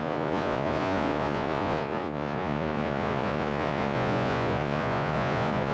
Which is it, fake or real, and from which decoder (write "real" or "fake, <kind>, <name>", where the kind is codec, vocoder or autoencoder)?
fake, vocoder, Vocos